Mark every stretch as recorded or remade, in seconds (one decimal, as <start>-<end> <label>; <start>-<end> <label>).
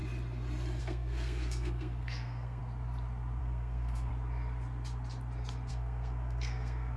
0.0-0.8 recorded; 0.8-2.6 remade; 2.6-3.4 recorded; 3.4-4.1 remade; 4.1-5.7 recorded; 5.7-7.0 remade